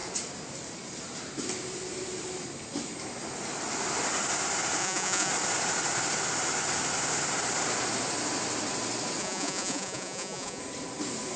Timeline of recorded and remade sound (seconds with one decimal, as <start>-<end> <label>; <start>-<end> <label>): 0.0-4.8 recorded; 4.8-5.3 remade; 5.3-9.2 recorded; 9.2-10.6 remade; 10.6-11.4 recorded